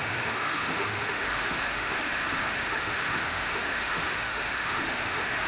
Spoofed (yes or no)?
yes